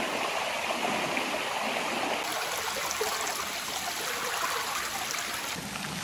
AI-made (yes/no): no